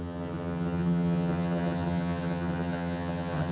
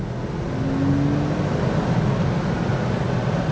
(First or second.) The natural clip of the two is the second